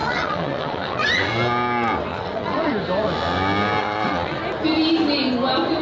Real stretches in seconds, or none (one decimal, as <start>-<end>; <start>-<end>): 1.3-2.1; 2.7-3.8; 4.4-5.8

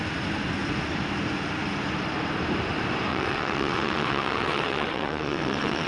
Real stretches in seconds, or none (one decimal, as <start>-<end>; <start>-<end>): 0.0-3.1

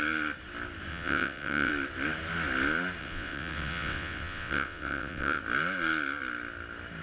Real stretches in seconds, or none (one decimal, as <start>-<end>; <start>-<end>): 0.0-0.9; 1.7-3.0; 5.4-7.0

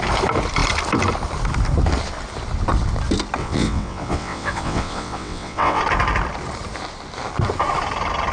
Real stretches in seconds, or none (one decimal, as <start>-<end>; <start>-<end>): 0.0-3.4; 5.8-8.3

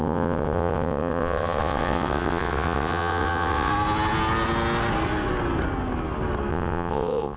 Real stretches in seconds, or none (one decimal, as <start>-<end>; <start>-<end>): 3.7-6.5

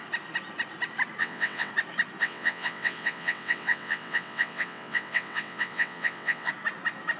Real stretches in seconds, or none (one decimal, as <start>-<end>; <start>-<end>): 0.0-1.2; 1.7-2.2; 6.5-7.2